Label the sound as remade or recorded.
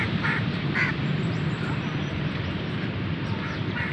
remade